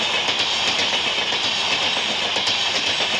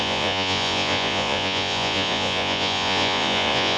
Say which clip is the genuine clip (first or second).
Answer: first